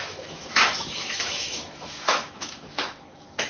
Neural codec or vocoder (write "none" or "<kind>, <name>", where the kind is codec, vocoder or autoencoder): autoencoder, DAC-VAE